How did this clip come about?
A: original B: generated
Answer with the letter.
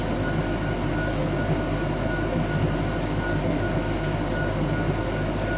A